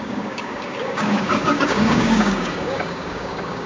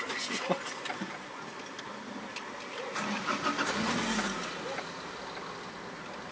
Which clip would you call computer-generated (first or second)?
first